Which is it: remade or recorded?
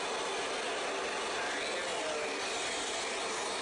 recorded